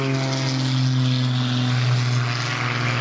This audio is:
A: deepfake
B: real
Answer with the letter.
B